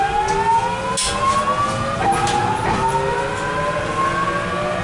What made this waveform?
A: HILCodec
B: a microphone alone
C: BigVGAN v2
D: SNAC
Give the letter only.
B